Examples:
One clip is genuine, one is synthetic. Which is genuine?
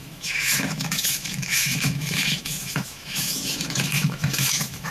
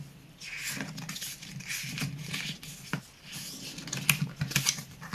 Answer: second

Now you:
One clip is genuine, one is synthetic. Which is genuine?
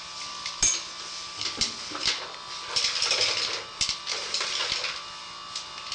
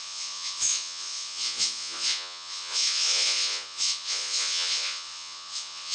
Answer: first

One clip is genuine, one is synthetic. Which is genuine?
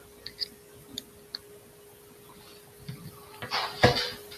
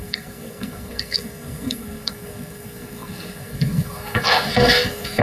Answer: first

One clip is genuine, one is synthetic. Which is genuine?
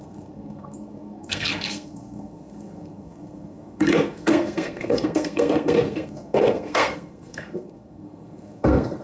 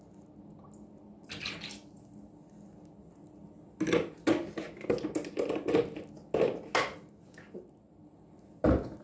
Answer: second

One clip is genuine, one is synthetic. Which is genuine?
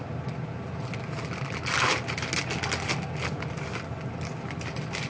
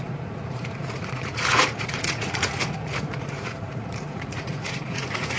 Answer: first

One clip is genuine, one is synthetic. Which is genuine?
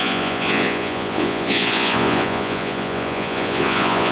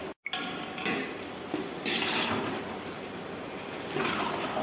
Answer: second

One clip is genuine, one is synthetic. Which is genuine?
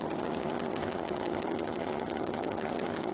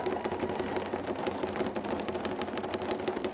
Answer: second